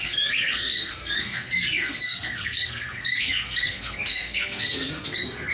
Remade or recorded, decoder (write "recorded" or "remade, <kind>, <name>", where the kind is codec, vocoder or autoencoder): remade, codec, SNAC